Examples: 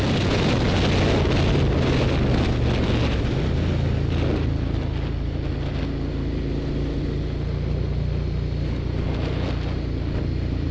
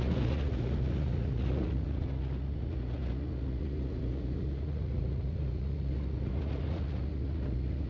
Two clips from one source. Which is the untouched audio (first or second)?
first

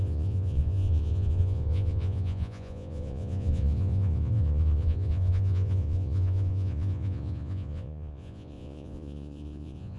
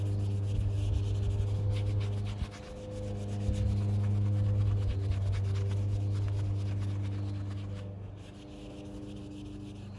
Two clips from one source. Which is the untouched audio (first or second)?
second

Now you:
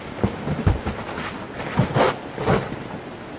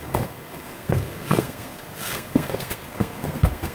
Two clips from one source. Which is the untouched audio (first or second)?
first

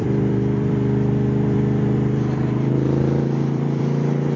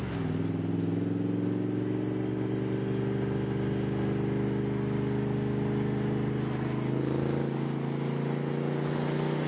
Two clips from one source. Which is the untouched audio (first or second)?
second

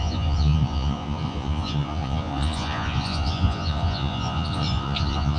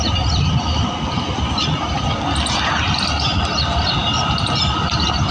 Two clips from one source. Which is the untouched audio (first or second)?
second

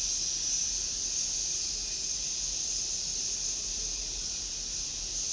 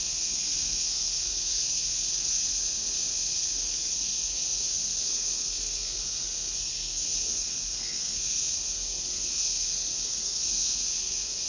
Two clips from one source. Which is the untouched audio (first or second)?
first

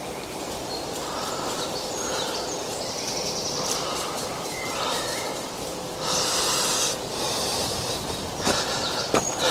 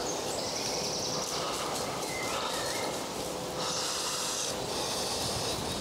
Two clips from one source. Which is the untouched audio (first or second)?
second